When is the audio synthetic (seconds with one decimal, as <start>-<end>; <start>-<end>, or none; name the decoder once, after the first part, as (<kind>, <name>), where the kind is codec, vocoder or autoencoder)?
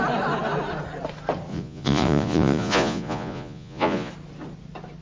1.5-4.1 (vocoder, Vocos)